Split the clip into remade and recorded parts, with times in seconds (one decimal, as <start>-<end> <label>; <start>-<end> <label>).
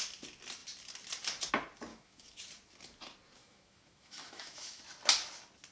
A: 0.0-1.9 recorded; 1.9-2.4 remade; 2.4-3.4 recorded; 3.4-4.8 remade; 4.8-5.7 recorded